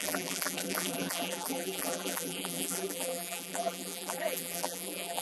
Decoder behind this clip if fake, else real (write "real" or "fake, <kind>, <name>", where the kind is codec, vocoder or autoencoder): fake, vocoder, BigVGAN v2